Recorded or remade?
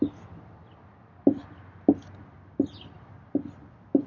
recorded